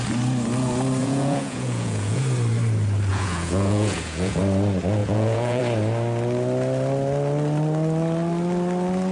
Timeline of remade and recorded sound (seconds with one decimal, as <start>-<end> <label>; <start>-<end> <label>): 0.0-1.0 recorded; 1.0-2.2 remade; 2.2-3.1 recorded; 3.1-4.4 remade; 4.4-5.0 recorded; 5.0-5.6 remade; 5.6-9.1 recorded